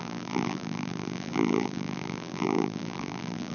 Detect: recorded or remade remade